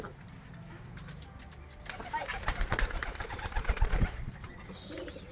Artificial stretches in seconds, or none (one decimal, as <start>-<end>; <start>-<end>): 2.3-4.5